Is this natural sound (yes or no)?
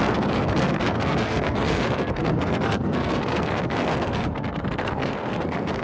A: no